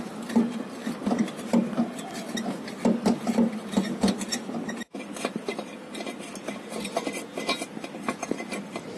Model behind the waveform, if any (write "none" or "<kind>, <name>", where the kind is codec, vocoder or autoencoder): none